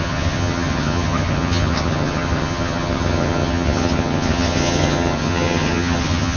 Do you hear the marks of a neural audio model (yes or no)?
yes